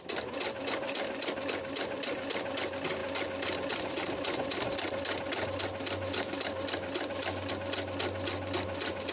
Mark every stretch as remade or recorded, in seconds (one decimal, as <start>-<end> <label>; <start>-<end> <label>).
0.0-9.1 recorded